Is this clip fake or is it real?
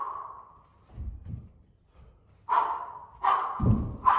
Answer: real